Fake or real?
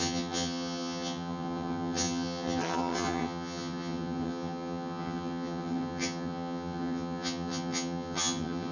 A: fake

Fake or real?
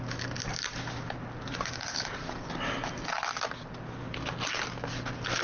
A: real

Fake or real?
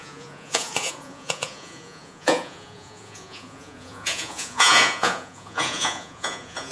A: fake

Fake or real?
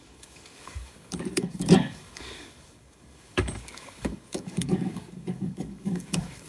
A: fake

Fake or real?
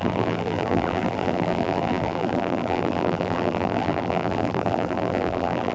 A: fake